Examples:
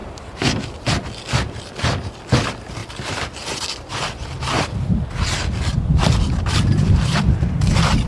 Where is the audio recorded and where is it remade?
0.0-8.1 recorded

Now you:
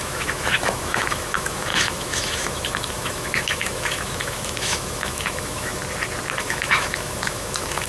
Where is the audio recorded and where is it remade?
0.0-5.8 remade; 5.8-6.4 recorded; 6.4-7.9 remade